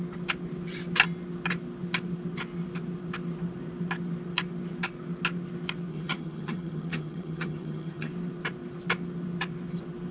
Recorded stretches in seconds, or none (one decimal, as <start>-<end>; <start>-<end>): 0.0-5.9; 8.1-10.1